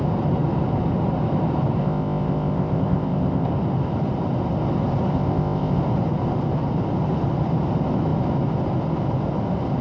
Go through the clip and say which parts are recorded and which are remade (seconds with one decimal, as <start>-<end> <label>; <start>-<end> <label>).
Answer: 0.0-1.8 recorded; 1.8-3.5 remade; 3.5-5.1 recorded; 5.1-5.8 remade; 5.8-9.8 recorded